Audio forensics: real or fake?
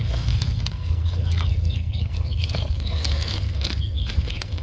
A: fake